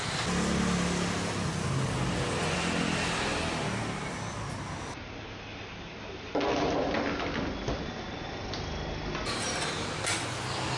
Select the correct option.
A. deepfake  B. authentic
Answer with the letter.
B